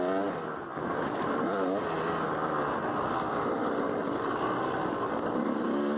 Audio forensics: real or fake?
real